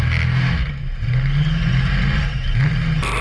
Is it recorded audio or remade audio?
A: recorded